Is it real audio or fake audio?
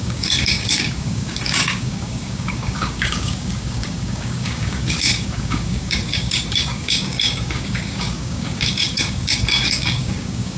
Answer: fake